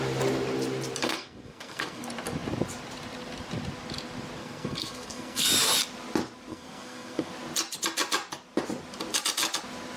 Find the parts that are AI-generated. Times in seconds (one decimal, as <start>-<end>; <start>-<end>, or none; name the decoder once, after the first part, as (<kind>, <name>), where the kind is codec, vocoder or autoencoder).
1.0-2.0 (codec, SNAC); 4.4-5.5; 6.5-7.3